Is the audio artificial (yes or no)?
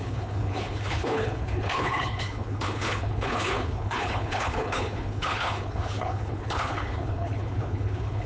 yes